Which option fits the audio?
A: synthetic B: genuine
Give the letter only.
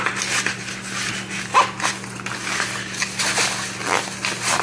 B